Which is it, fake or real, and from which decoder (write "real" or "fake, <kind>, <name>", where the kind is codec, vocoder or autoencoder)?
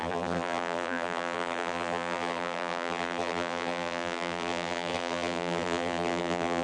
fake, vocoder, BigVGAN v2